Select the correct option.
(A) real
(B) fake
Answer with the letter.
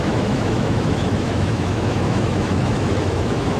B